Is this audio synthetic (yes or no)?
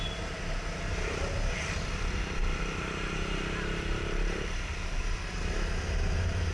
no